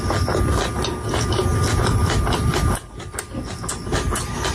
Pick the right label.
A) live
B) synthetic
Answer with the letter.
A